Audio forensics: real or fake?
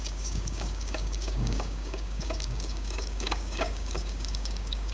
fake